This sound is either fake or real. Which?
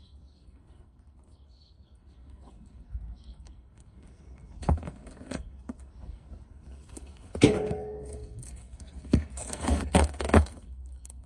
fake